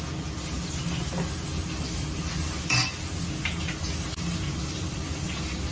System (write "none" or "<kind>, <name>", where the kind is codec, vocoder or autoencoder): none